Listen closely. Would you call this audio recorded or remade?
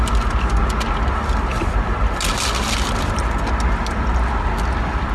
recorded